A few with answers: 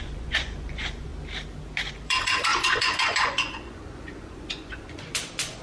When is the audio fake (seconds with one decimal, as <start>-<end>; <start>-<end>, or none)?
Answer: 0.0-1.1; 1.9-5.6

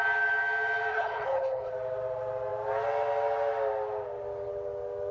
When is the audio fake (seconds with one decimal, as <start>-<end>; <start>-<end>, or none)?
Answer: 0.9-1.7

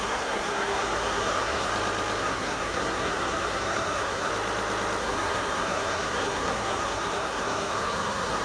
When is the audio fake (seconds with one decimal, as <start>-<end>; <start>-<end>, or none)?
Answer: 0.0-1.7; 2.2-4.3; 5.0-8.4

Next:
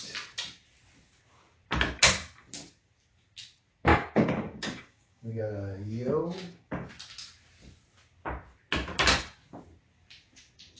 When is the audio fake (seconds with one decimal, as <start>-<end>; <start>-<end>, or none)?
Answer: 3.9-5.4; 6.2-6.9